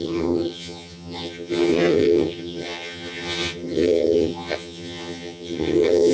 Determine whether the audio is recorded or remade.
remade